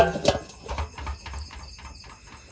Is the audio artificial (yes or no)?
no